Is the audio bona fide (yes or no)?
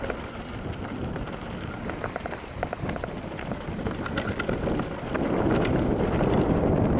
yes